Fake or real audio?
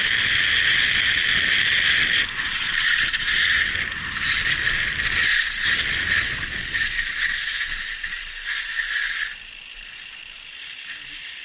real